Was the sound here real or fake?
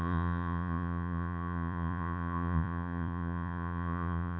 fake